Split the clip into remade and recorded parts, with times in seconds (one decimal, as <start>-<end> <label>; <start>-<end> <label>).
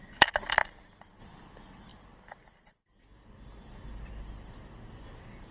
0.0-0.6 remade; 0.6-1.2 recorded; 1.2-5.5 remade